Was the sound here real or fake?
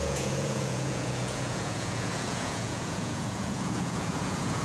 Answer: fake